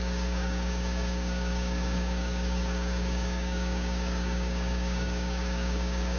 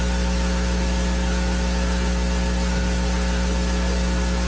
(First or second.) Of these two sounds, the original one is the second